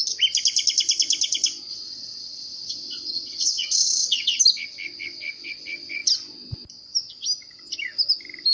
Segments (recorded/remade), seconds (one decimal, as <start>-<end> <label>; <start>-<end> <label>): 0.0-1.7 recorded; 1.7-4.4 remade; 4.4-8.5 recorded